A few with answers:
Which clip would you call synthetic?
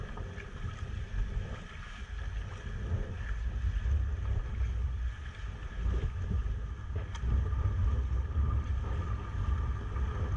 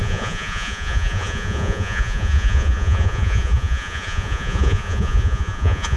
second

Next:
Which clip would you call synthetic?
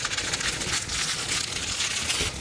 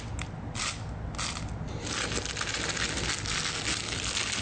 first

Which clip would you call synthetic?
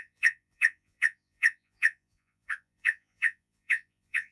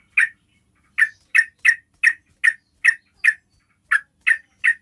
first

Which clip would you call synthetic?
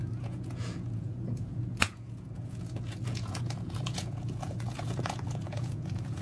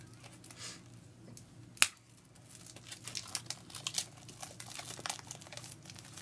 first